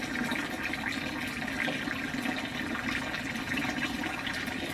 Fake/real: real